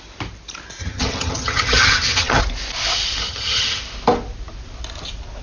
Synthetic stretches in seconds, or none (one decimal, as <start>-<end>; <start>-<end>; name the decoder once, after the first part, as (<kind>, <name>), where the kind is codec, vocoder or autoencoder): 0.8-2.4 (vocoder, HiFi-GAN); 3.2-3.8